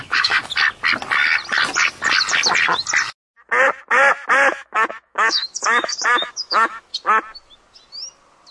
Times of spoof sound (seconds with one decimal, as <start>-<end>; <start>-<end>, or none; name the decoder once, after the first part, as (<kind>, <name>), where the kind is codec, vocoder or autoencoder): 0.0-0.4 (autoencoder, DAC-VAE); 4.5-6.9